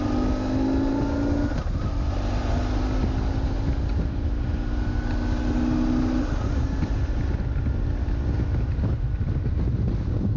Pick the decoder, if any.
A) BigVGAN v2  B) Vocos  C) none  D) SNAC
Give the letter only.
C